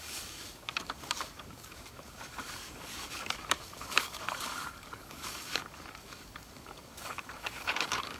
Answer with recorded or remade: remade